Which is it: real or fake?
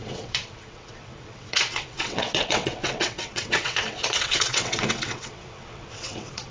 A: fake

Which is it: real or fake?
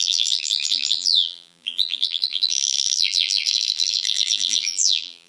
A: fake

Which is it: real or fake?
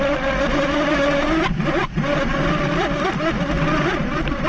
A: real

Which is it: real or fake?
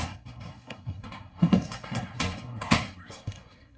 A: fake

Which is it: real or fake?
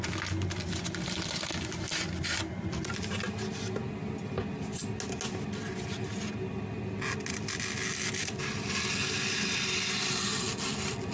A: real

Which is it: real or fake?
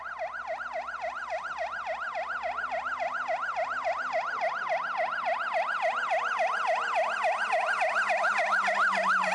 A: real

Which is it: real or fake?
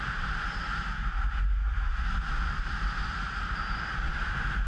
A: real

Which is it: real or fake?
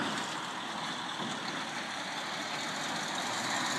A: real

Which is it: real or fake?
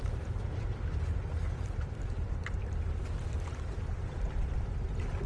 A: fake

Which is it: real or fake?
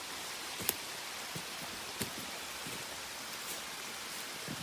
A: real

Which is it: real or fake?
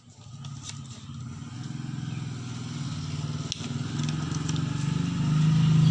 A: real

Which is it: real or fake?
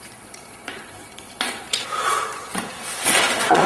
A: fake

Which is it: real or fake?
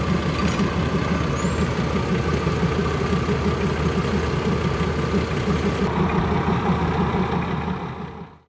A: real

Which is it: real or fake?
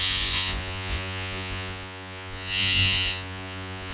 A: fake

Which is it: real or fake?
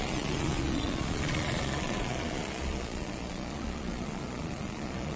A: fake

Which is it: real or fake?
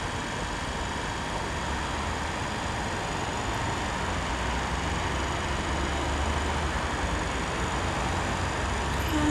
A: real